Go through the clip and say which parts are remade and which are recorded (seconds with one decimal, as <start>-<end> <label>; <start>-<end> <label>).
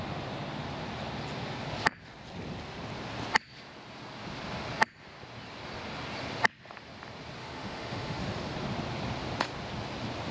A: 0.0-7.4 recorded; 7.4-8.2 remade; 8.2-10.3 recorded